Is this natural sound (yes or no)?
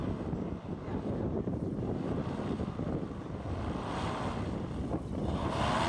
yes